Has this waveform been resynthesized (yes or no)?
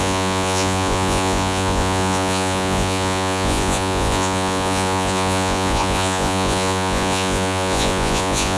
yes